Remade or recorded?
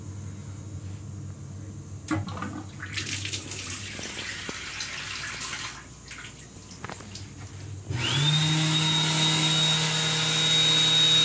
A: recorded